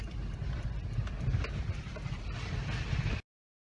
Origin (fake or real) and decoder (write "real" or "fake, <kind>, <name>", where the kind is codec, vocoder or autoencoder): real